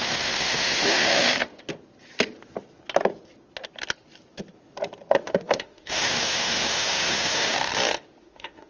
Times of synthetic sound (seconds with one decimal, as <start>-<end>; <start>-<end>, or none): 0.0-1.5; 5.1-7.7; 8.2-8.7